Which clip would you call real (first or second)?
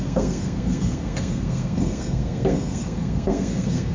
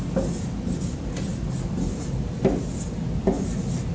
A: second